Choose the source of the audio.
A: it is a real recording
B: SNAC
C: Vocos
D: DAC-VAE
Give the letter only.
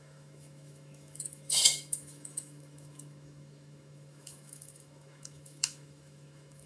D